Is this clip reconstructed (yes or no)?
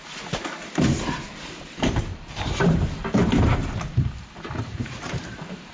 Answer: yes